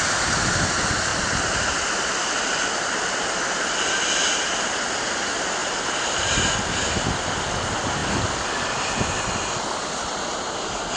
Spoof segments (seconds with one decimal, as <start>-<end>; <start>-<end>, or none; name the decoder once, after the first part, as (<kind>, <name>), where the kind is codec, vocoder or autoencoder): 1.1-1.9 (vocoder, BigVGAN v2)